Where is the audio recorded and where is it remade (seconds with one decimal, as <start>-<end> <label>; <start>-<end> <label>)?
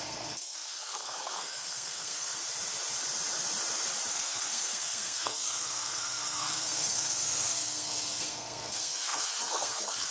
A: 0.0-2.4 remade; 2.4-4.1 recorded; 4.1-10.1 remade